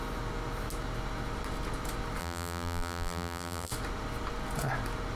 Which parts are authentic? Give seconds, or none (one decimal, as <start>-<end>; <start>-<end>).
0.0-2.2; 3.7-5.2